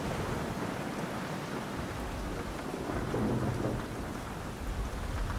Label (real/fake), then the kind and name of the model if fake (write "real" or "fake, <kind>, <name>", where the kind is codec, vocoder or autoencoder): real